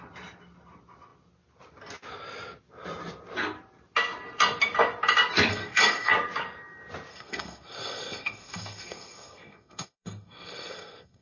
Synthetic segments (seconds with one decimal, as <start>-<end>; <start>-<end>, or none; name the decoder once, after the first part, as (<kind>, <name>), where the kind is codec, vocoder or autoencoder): 5.5-6.1 (codec, SNAC); 7.1-11.2